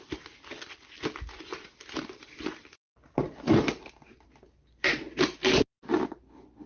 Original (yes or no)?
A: yes